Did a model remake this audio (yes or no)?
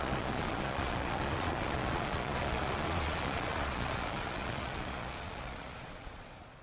yes